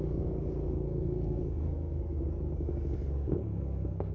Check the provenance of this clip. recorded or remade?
remade